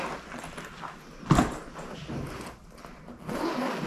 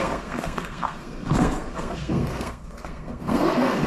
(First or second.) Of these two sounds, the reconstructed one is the second